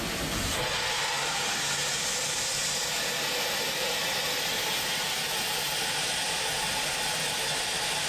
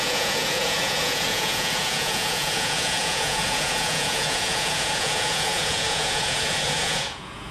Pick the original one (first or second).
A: first